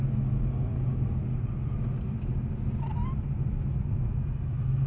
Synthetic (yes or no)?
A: no